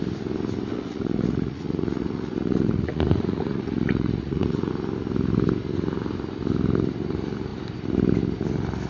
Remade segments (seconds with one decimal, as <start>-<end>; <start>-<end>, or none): 0.7-4.7